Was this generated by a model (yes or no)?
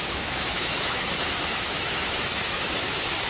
yes